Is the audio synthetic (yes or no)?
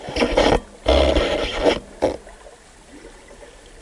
no